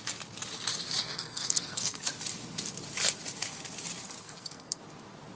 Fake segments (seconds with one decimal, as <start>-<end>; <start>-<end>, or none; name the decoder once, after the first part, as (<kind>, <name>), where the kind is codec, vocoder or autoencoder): 1.0-2.0 (codec, SNAC); 4.2-4.8